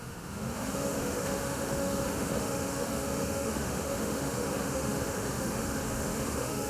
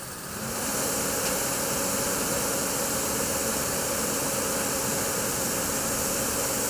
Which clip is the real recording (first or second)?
second